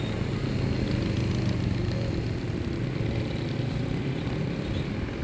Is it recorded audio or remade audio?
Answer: recorded